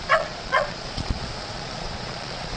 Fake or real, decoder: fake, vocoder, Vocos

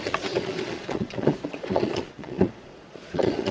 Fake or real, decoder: fake, vocoder, Vocos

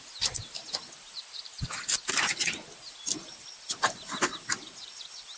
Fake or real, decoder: real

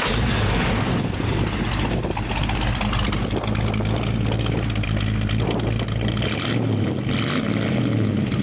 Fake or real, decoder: real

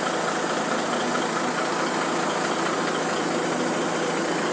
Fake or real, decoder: real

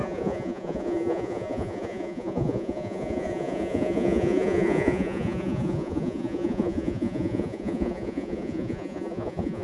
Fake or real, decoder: fake, vocoder, Vocos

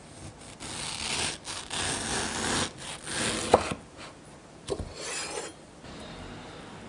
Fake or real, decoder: real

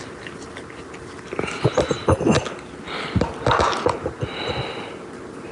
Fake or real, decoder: real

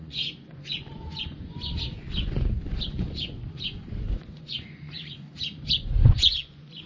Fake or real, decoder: fake, vocoder, Vocos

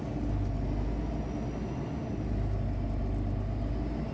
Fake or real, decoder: real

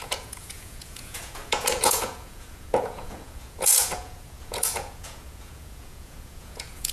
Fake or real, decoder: fake, vocoder, Vocos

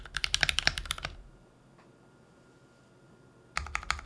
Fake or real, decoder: real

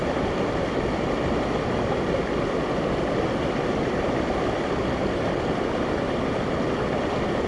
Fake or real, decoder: real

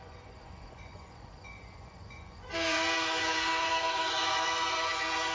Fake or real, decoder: fake, vocoder, Vocos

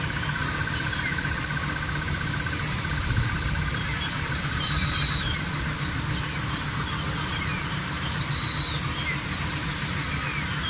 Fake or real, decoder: real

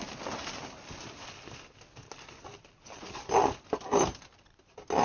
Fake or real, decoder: real